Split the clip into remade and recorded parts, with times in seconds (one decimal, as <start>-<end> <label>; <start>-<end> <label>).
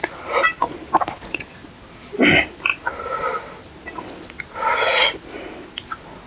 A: 0.0-6.3 recorded